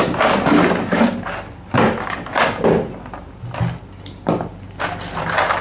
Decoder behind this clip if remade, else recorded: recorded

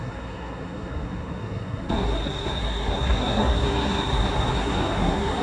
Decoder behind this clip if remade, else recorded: remade, codec, SNAC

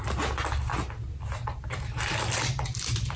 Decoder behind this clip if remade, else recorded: recorded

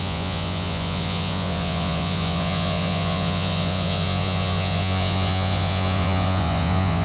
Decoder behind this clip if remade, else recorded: remade, vocoder, Vocos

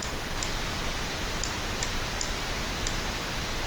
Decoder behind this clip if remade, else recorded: recorded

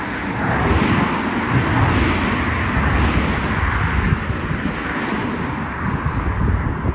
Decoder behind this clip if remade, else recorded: recorded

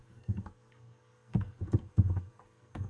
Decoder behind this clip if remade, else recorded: remade, codec, SNAC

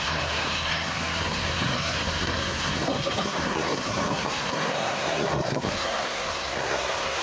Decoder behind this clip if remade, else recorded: remade, codec, SNAC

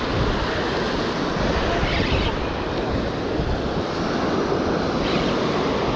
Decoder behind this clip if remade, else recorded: recorded